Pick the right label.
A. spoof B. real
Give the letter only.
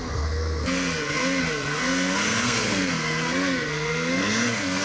A